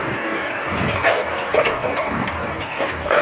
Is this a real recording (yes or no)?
no